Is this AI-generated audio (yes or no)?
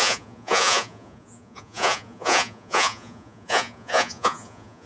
yes